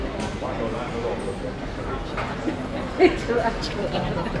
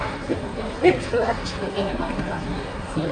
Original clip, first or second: first